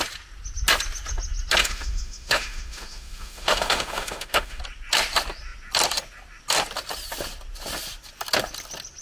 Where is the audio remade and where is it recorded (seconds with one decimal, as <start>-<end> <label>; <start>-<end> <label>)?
0.0-1.6 recorded; 1.6-4.6 remade; 4.6-9.0 recorded